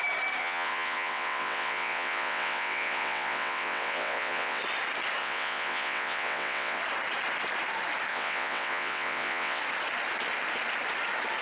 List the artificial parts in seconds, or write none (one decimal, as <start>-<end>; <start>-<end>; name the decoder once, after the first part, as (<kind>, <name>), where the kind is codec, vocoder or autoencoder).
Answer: 0.4-4.6 (vocoder, WaveNeXt); 5.2-6.8; 8.1-9.6